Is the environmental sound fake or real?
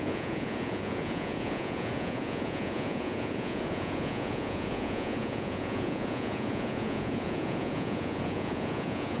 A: fake